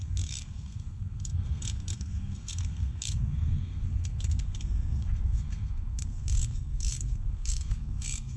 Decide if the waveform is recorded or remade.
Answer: remade